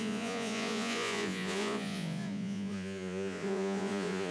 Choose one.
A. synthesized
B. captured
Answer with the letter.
A